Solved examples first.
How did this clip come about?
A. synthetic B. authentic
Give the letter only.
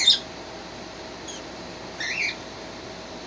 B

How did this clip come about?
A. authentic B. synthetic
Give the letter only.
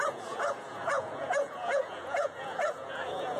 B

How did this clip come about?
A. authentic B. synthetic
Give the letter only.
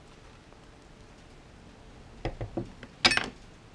A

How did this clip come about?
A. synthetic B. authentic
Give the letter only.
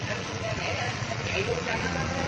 A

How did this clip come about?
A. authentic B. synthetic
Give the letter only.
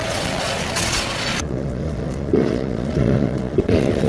B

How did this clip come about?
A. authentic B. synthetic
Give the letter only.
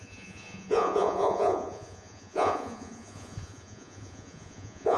B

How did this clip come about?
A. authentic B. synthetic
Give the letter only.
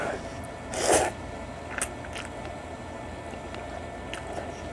A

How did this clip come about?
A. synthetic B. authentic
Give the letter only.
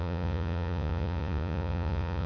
A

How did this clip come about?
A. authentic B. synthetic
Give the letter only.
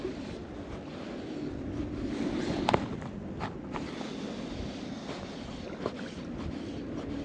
A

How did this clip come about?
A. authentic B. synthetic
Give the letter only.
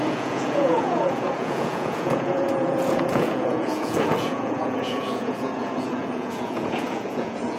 B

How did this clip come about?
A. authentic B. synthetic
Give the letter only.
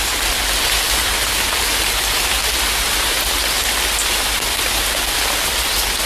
A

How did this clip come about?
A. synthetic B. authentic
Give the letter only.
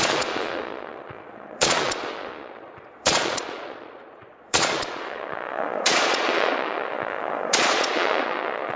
A